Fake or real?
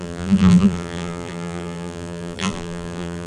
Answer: fake